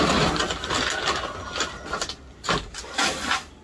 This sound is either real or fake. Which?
real